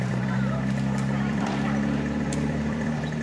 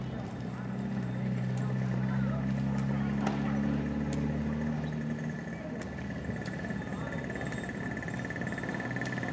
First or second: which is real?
second